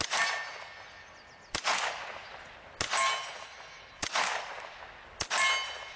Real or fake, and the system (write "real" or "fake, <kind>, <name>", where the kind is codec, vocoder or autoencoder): real